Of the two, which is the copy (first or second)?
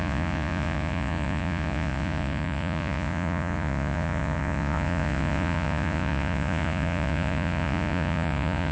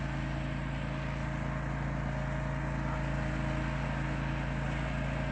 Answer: first